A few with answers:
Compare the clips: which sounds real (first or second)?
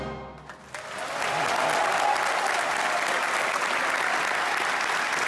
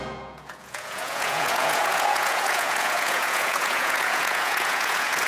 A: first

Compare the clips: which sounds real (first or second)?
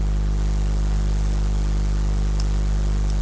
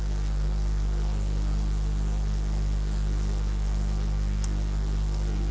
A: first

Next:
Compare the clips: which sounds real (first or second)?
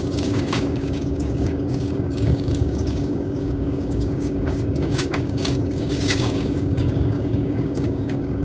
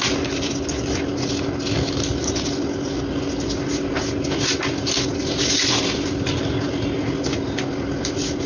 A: second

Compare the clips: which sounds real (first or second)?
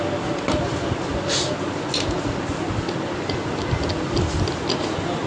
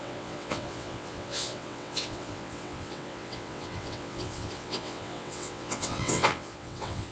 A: first